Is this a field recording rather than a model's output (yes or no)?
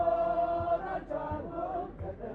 yes